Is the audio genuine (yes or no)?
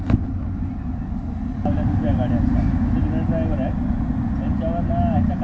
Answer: yes